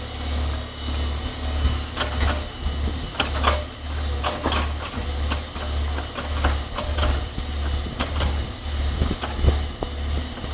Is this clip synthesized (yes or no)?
no